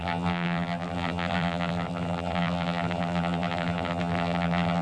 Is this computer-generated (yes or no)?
yes